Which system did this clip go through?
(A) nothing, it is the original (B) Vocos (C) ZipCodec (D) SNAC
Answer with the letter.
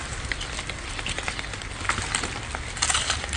A